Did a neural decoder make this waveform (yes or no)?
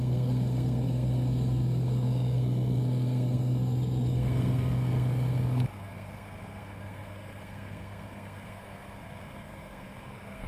yes